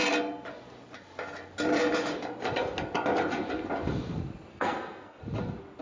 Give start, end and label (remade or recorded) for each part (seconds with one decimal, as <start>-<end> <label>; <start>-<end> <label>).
0.0-4.5 recorded; 4.5-5.2 remade; 5.2-5.8 recorded